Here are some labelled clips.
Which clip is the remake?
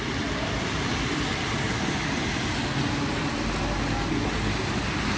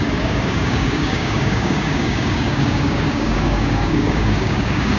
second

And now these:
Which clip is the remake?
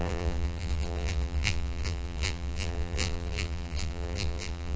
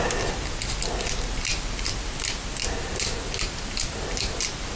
first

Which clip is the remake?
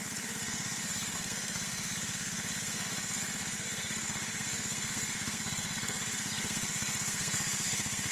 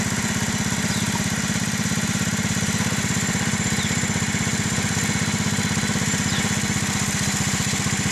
first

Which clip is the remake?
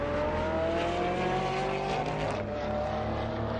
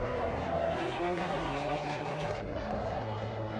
second